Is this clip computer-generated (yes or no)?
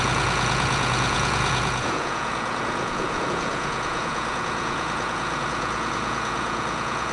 yes